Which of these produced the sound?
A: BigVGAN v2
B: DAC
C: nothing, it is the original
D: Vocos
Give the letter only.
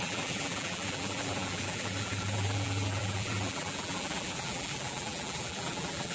A